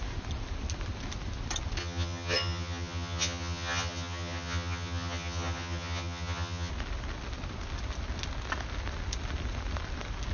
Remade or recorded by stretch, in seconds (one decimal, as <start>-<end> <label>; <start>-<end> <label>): 0.0-1.8 recorded; 1.8-6.7 remade; 6.7-10.3 recorded